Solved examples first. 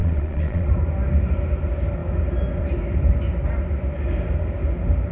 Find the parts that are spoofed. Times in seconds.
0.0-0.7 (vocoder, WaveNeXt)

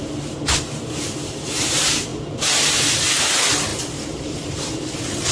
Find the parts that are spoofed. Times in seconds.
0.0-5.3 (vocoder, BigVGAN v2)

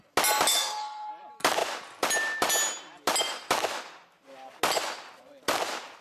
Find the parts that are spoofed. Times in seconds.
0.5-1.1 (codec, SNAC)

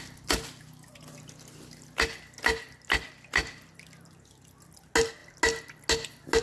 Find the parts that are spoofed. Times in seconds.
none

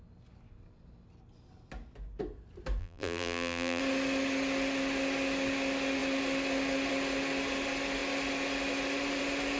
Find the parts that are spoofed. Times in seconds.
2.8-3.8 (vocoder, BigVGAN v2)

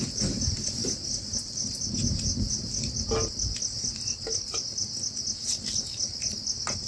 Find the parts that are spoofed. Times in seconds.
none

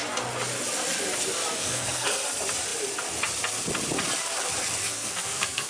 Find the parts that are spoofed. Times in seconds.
1.6-2.2 (codec, SNAC); 4.8-5.7

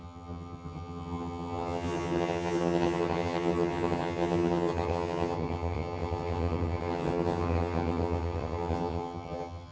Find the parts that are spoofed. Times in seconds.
0.0-9.7 (vocoder, HiFi-GAN)